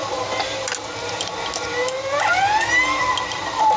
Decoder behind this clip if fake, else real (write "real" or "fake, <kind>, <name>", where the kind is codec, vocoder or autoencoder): real